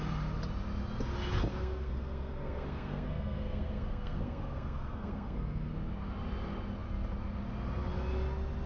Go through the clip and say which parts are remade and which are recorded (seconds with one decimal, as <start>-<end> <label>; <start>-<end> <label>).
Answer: 0.0-1.5 recorded; 1.5-5.7 remade; 5.7-8.7 recorded